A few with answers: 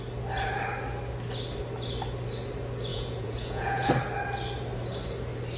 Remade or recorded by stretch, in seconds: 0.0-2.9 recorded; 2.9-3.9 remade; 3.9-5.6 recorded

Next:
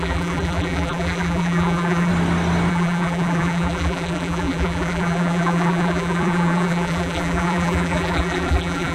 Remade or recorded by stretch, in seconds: 0.0-2.1 remade; 2.1-2.7 recorded; 2.7-8.9 remade

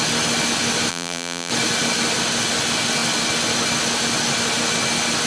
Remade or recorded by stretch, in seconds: 0.0-0.9 recorded; 0.9-1.5 remade; 1.5-5.3 recorded

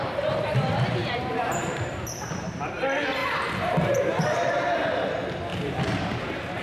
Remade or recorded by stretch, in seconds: 0.0-1.0 recorded; 1.0-2.3 remade; 2.3-3.2 recorded; 3.2-4.5 remade; 4.5-5.5 recorded; 5.5-6.6 remade